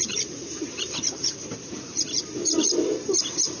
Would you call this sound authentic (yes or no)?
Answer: no